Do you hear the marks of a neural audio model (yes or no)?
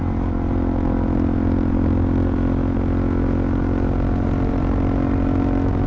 no